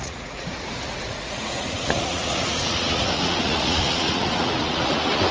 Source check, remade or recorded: remade